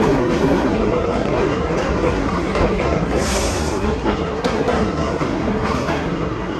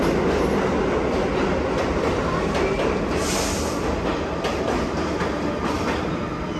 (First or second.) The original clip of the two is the second